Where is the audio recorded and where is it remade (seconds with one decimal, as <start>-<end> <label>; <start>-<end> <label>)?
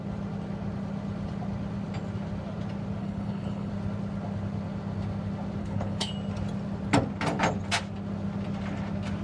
0.0-3.0 recorded; 3.0-3.7 remade; 3.7-5.6 recorded; 5.6-6.1 remade; 6.1-9.2 recorded